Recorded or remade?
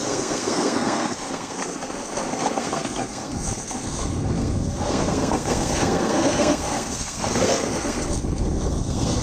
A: remade